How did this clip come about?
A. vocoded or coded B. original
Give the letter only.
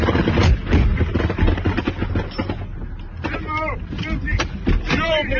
B